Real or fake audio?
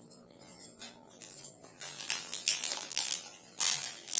fake